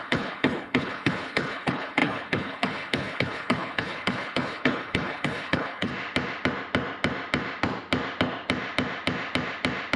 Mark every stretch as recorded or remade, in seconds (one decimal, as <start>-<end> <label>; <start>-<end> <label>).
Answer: 0.0-5.9 remade; 5.9-10.0 recorded